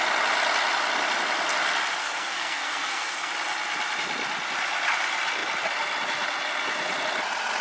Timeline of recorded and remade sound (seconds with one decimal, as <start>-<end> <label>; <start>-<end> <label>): 0.0-2.0 recorded; 2.0-3.3 remade; 3.3-7.6 recorded